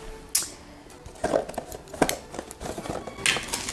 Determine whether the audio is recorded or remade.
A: recorded